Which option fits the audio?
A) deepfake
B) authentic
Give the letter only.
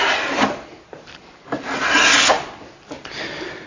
B